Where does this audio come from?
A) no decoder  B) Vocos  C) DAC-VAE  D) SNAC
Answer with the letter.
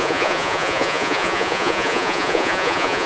B